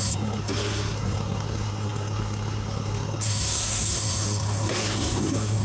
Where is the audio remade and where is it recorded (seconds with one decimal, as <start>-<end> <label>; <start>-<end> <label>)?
0.0-5.6 remade